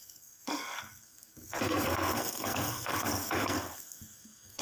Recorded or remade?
remade